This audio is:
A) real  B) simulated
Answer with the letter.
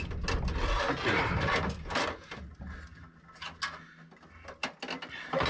A